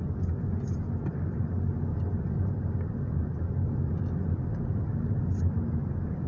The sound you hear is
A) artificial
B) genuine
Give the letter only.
B